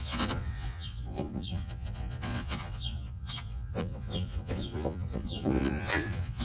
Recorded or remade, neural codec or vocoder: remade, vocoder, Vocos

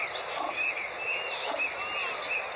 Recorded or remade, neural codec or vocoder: recorded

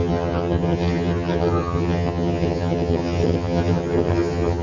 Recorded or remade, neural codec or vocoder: remade, vocoder, HiFi-GAN